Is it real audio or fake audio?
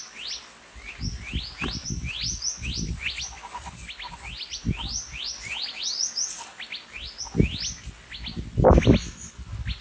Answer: real